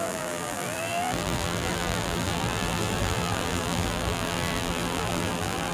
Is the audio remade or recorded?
remade